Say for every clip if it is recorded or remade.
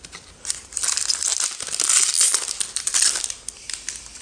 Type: recorded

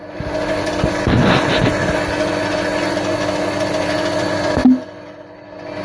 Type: recorded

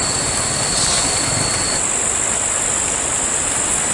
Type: recorded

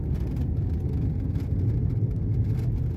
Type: recorded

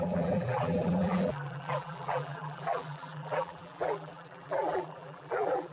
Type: remade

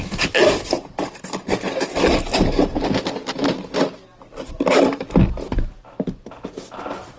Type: recorded